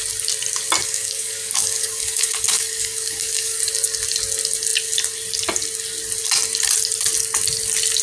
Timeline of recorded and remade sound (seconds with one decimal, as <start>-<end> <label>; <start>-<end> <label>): 0.0-0.8 recorded; 0.8-3.6 remade; 3.6-8.0 recorded